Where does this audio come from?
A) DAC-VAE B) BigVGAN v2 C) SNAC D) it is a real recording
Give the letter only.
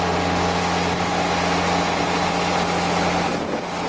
D